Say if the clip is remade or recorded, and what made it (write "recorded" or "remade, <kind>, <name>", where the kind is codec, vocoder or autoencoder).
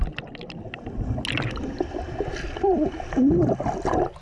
recorded